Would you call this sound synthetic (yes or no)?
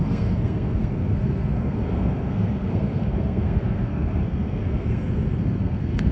yes